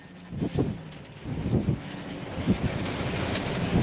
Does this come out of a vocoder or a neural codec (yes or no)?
no